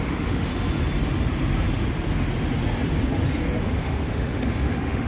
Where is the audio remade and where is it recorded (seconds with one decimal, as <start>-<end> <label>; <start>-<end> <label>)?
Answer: 0.0-0.5 remade; 0.5-3.6 recorded; 3.6-5.1 remade